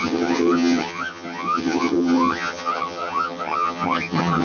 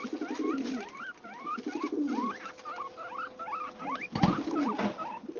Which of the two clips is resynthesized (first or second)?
first